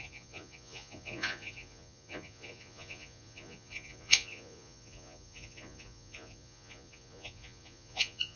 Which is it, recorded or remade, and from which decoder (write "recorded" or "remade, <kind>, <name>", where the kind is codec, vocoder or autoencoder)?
remade, vocoder, Vocos